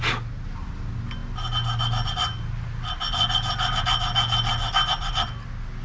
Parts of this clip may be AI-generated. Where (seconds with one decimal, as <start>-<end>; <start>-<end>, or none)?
none